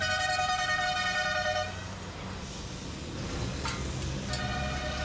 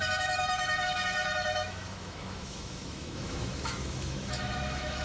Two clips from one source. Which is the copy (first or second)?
second